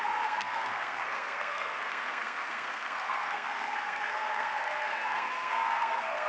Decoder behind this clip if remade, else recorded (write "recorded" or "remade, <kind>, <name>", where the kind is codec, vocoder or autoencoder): remade, codec, SNAC